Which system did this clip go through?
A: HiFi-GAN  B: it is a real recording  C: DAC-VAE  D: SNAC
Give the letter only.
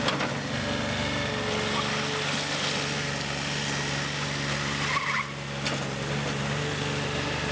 B